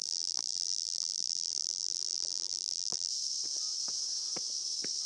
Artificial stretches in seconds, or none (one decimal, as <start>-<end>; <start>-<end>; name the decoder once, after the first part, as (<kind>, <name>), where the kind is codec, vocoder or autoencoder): 0.0-3.1 (vocoder, BigVGAN v2)

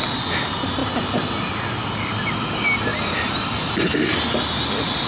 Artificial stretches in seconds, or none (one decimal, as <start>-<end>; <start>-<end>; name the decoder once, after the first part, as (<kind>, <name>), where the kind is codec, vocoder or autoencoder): 2.9-4.2 (vocoder, BigVGAN v2)

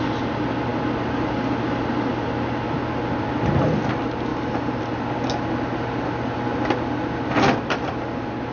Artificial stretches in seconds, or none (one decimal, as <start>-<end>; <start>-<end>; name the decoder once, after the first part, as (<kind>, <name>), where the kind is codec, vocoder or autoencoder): 4.3-4.8 (vocoder, BigVGAN v2)

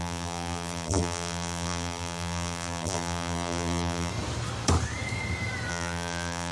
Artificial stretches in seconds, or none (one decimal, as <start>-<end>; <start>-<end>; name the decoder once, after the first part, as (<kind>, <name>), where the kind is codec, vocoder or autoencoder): 0.0-4.1 (vocoder, BigVGAN v2); 5.7-6.5

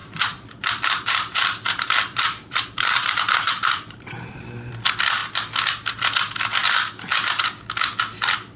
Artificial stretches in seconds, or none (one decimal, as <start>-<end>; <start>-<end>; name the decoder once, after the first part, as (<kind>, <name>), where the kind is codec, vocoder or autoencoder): 0.0-4.7 (vocoder, BigVGAN v2)

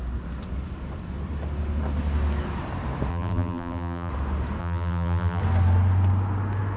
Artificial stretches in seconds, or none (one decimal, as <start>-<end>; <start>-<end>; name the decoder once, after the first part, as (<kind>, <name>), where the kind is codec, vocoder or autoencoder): 3.1-4.1 (vocoder, BigVGAN v2); 4.6-5.4

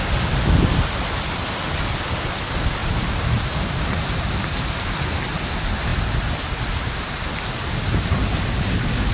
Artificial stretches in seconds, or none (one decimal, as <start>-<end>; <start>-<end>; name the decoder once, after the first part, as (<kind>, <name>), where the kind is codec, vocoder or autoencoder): 2.8-4.9 (vocoder, BigVGAN v2)